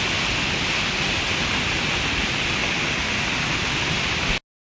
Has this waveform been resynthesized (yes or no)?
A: no